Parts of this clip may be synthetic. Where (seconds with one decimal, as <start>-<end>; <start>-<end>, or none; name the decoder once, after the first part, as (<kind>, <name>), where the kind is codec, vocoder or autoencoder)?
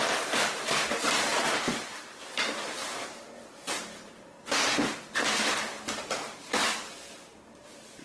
0.0-8.0 (vocoder, BigVGAN v2)